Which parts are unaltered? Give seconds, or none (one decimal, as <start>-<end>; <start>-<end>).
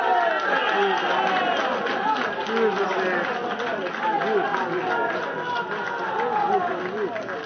0.0-7.5